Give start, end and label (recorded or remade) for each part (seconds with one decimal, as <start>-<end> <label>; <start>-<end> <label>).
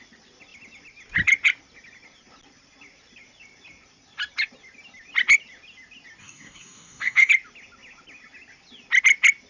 0.0-6.2 recorded; 6.2-7.3 remade; 7.3-9.5 recorded